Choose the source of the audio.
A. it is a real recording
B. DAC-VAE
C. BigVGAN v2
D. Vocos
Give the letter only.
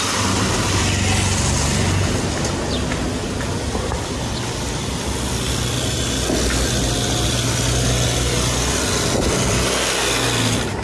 A